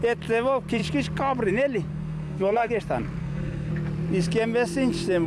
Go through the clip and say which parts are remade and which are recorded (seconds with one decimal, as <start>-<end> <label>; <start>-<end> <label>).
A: 0.0-1.9 recorded; 1.9-2.7 remade; 2.7-3.2 recorded; 3.2-3.7 remade; 3.7-5.3 recorded